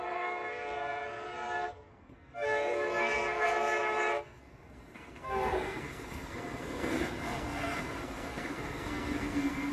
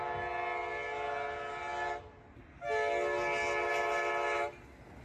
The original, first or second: second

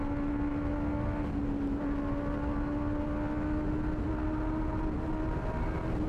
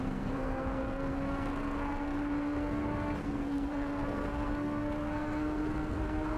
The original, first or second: first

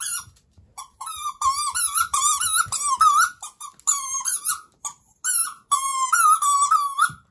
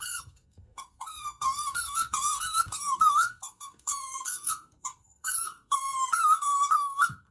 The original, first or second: first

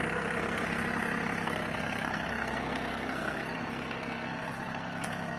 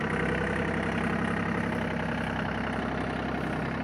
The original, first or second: second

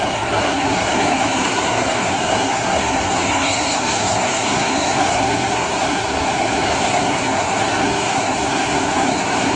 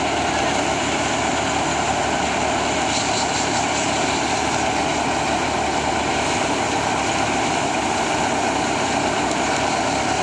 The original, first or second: second